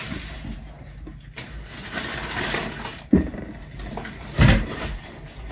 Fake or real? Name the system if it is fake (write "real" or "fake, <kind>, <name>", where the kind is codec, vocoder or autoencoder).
fake, vocoder, BigVGAN v2